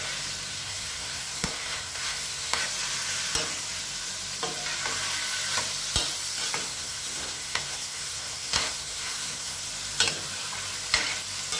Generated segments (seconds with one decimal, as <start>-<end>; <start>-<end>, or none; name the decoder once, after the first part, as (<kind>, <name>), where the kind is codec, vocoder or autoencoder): 0.5-2.6 (codec, SNAC); 6.7-9.7